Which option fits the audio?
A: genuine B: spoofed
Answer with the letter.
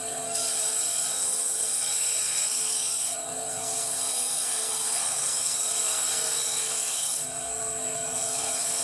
B